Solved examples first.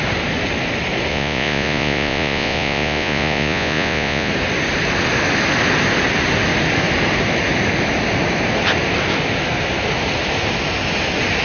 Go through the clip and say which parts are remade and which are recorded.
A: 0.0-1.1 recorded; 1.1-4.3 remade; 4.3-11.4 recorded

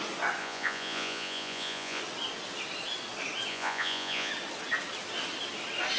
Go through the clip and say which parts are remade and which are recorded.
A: 0.0-0.4 recorded; 0.4-2.0 remade; 2.0-3.5 recorded; 3.5-4.3 remade; 4.3-6.0 recorded

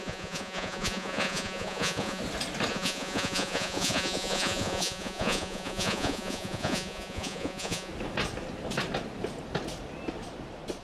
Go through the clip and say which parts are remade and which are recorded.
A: 0.0-2.2 remade; 2.2-2.7 recorded; 2.7-7.9 remade; 7.9-10.8 recorded

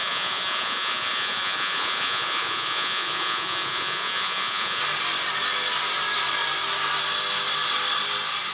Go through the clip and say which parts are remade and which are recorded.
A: 0.0-4.8 remade; 4.8-8.5 recorded

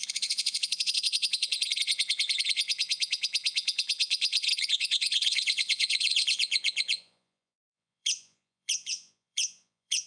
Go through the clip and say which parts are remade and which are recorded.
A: 0.0-10.1 remade